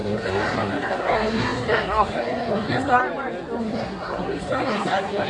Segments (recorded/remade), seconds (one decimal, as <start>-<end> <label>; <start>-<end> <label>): 0.0-3.0 remade; 3.0-3.6 recorded; 3.6-5.3 remade